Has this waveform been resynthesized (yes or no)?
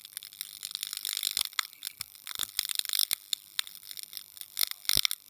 no